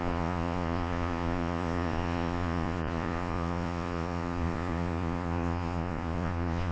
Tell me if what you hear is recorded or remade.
remade